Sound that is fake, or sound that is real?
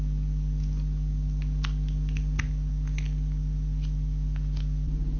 real